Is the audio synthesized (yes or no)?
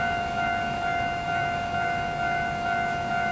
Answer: yes